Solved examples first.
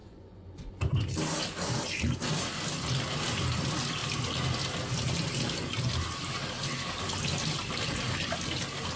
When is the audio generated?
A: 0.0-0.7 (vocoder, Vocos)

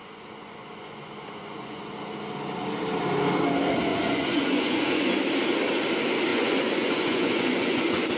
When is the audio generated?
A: 0.0-1.9 (vocoder, Vocos); 3.9-5.2; 6.3-8.2

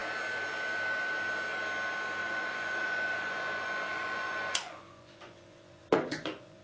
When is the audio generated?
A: 2.2-6.6 (vocoder, Vocos)